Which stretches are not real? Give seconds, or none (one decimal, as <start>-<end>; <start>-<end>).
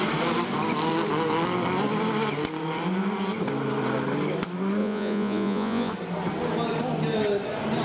4.8-5.9